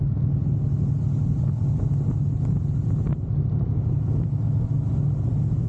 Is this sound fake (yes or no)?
no